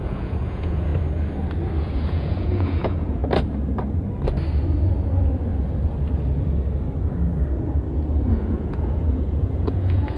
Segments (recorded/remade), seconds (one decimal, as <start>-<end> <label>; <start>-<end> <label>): 0.0-0.9 remade; 0.9-1.8 recorded; 1.8-3.2 remade; 3.2-8.3 recorded; 8.3-10.2 remade